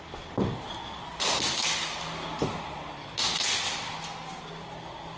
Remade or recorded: recorded